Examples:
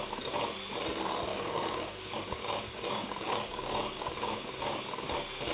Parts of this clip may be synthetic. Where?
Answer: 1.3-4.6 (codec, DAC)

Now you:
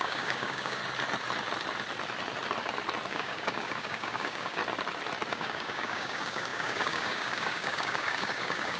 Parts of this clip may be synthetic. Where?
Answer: 0.0-0.8 (codec, DAC); 3.1-4.6; 5.3-8.8

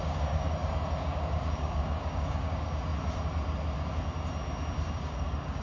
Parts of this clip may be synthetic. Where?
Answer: 0.0-2.9 (codec, DAC); 4.9-5.6

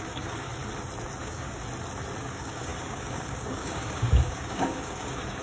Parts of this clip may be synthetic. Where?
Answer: 0.0-0.5 (codec, DAC); 1.2-1.6; 2.2-5.4

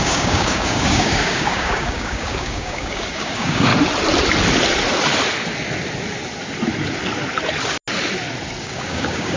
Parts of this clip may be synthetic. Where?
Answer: 0.0-3.7 (codec, DAC); 8.6-9.4

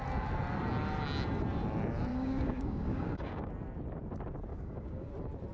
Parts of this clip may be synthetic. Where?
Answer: 2.1-3.5 (codec, DAC); 4.5-5.1